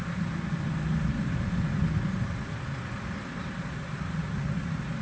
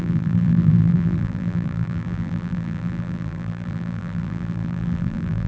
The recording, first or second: first